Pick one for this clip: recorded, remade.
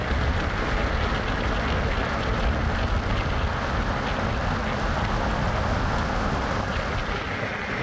recorded